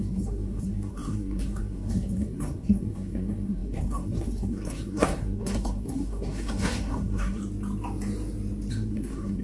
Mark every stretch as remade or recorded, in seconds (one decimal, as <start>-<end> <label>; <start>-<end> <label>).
0.0-7.4 remade; 7.4-8.7 recorded; 8.7-9.4 remade